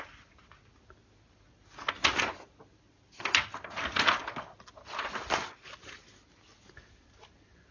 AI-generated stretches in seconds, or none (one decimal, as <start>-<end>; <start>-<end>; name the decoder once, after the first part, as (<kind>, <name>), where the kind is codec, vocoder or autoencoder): none

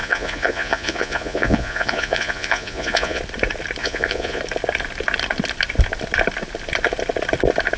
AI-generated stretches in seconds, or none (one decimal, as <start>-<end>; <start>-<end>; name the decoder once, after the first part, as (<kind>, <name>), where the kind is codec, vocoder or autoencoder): 0.0-3.2 (vocoder, Vocos); 3.8-4.4

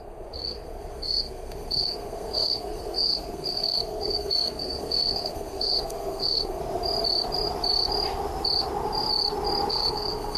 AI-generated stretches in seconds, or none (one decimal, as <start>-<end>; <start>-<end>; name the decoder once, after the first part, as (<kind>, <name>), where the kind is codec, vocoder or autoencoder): 0.0-6.6 (codec, SNAC); 9.7-10.4

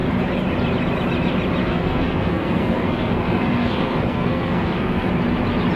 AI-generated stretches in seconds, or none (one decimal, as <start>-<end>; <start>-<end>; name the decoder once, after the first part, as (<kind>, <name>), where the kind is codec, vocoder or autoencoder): 1.6-5.1 (codec, SNAC)